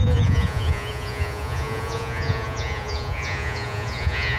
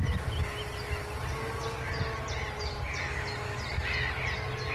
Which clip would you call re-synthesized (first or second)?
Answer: first